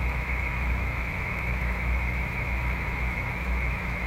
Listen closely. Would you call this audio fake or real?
fake